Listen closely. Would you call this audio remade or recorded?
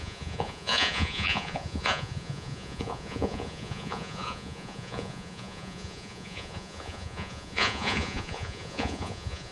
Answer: remade